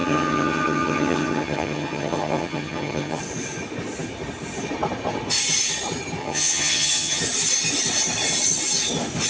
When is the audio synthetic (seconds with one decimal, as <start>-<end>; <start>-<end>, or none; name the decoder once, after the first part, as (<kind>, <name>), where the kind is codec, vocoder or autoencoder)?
0.0-3.2 (vocoder, HiFi-GAN); 6.2-7.2